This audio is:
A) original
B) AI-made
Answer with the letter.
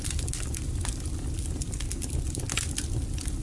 A